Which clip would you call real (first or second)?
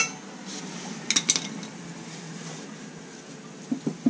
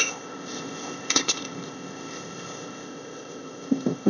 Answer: first